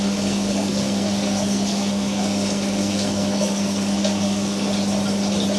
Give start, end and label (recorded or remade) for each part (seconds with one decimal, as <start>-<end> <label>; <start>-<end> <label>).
0.0-4.7 remade; 4.7-5.6 recorded